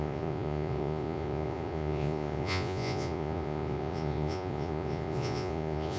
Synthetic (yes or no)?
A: yes